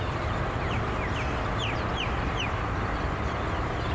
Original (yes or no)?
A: yes